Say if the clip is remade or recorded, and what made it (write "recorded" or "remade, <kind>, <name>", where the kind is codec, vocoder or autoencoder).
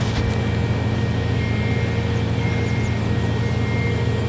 recorded